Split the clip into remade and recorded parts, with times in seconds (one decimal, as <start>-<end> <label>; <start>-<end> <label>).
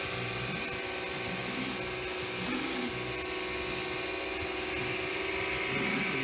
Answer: 0.0-6.2 recorded